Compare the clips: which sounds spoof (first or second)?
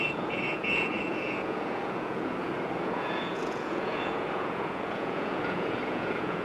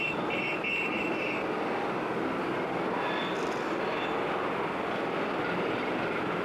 first